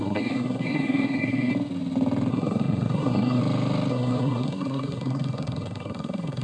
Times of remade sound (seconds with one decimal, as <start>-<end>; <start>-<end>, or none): 0.0-1.5; 2.3-3.4; 3.9-6.4